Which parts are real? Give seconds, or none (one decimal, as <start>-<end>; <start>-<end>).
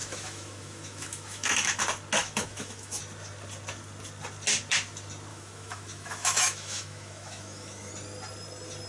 1.8-2.2; 3.0-5.3; 7.9-8.9